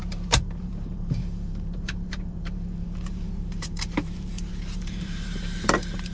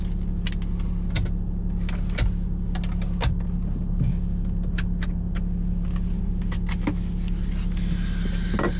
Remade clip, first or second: first